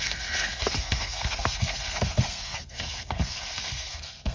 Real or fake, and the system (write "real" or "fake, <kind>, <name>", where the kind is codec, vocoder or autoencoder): fake, codec, SNAC